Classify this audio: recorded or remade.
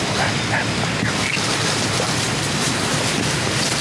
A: recorded